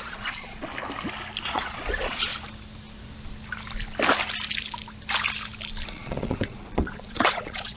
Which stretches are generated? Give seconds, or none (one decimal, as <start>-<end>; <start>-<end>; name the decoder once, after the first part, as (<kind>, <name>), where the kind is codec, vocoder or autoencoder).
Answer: 0.0-0.7 (vocoder, Vocos); 1.4-2.3; 5.9-7.8